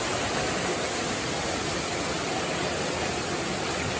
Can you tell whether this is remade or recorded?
recorded